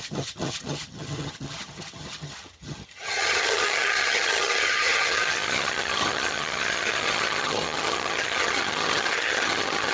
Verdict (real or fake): fake